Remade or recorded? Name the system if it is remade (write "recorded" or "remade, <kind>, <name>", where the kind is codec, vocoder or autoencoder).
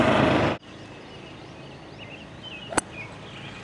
recorded